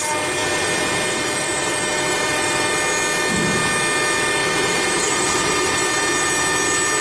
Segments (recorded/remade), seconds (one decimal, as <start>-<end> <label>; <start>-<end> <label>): 0.0-0.4 recorded; 0.4-2.7 remade; 2.7-4.4 recorded; 4.4-5.5 remade; 5.5-7.0 recorded